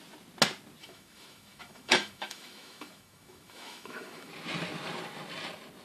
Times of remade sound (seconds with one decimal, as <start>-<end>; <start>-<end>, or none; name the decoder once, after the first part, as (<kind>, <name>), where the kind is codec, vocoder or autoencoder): 0.8-4.3 (autoencoder, DAC-VAE)

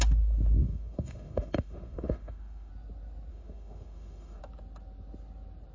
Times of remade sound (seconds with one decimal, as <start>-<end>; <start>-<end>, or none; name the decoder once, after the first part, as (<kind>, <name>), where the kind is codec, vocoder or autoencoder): 0.6-2.7 (autoencoder, DAC-VAE); 3.3-4.4

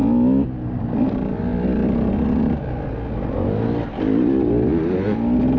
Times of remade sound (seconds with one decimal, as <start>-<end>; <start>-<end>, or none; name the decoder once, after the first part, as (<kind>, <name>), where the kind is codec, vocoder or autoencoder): none

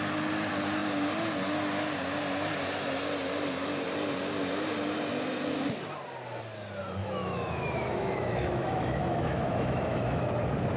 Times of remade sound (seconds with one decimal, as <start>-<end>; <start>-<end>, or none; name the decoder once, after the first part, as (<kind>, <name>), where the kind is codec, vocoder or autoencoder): 7.0-10.2 (autoencoder, DAC-VAE)

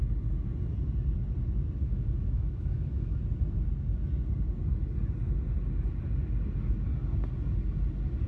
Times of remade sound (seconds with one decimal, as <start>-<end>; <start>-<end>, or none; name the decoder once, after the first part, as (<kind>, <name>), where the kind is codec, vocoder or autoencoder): 1.8-3.2 (autoencoder, DAC-VAE)

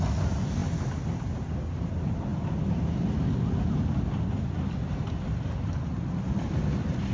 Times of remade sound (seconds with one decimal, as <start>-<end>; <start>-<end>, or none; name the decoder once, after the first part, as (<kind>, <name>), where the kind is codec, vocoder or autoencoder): none

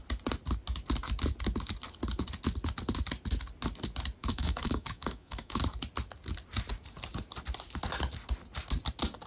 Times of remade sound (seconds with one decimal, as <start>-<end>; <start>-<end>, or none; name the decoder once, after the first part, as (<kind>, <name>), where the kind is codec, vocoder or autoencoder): 4.2-5.6 (autoencoder, DAC-VAE)

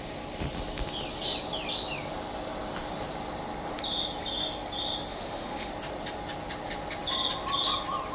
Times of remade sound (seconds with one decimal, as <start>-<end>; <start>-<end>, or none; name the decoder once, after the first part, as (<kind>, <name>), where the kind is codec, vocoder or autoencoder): 5.1-5.7 (autoencoder, DAC-VAE)